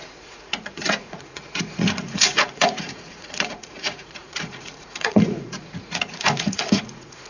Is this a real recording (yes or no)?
no